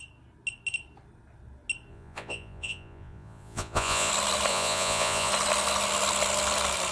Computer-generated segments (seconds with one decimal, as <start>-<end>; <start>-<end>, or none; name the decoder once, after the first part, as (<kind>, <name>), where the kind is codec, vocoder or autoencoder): 1.9-4.1 (vocoder, Vocos); 4.5-5.3